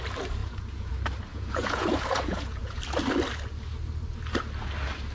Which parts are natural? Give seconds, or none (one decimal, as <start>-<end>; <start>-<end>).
0.0-0.4; 0.9-1.3; 2.8-5.1